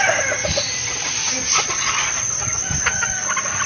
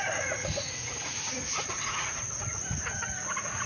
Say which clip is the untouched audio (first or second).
first